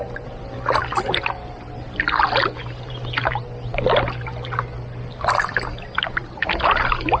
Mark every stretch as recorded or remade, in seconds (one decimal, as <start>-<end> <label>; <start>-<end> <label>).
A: 0.0-7.2 recorded